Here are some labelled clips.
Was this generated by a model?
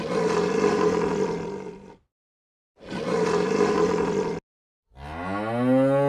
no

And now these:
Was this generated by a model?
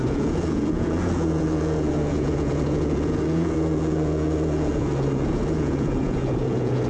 yes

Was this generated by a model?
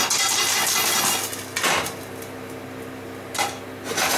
no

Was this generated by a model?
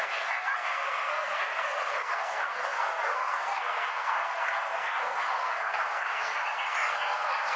yes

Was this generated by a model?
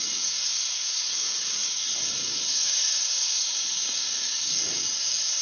yes